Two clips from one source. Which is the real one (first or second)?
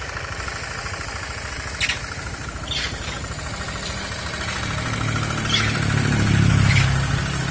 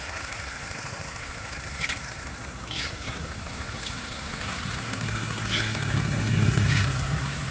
first